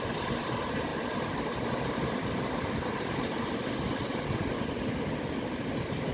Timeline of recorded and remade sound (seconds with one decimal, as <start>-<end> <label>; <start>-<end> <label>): 0.0-6.1 recorded